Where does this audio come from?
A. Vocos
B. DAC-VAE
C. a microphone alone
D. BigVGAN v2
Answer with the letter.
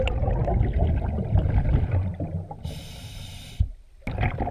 C